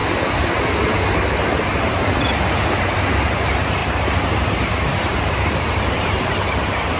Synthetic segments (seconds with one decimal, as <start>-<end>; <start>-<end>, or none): 3.8-6.2